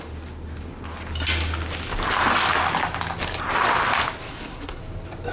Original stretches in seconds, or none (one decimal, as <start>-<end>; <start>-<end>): 0.0-4.3; 4.8-5.3